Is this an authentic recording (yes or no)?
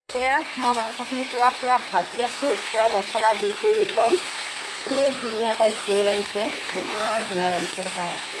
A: no